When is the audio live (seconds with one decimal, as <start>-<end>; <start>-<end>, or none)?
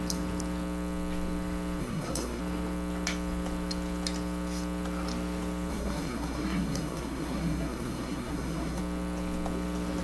0.0-1.8; 2.4-5.7; 8.8-10.0